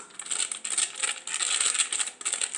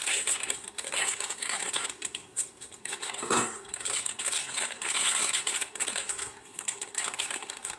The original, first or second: first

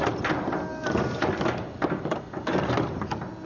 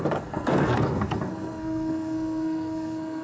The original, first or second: first